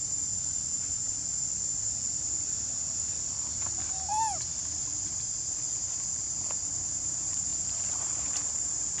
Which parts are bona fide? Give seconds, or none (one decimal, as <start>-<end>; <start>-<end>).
0.0-7.5; 8.1-9.0